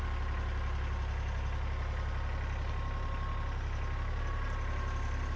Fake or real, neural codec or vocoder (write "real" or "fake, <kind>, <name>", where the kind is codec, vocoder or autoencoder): real